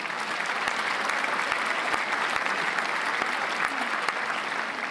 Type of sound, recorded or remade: recorded